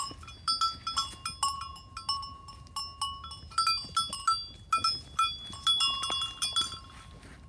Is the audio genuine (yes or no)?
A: yes